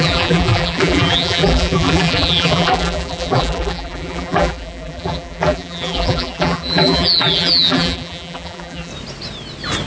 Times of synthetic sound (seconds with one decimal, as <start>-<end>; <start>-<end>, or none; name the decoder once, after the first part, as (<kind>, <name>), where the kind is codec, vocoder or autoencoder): 0.0-8.9 (vocoder, BigVGAN v2)